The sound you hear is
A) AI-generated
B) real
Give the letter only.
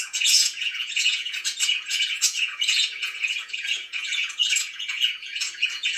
A